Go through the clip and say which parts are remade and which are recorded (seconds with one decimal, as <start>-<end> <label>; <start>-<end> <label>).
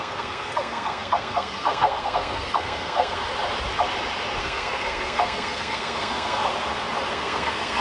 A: 0.0-3.2 remade; 3.2-4.4 recorded; 4.4-6.5 remade; 6.5-7.1 recorded; 7.1-7.8 remade